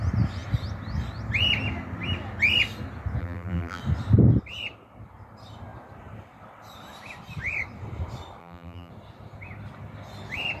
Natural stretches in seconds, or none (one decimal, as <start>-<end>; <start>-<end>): 0.0-3.2; 3.8-8.4; 8.9-10.6